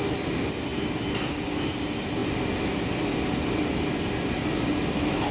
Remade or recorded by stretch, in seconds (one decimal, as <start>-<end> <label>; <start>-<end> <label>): 0.0-2.2 recorded; 2.2-2.8 remade; 2.8-5.3 recorded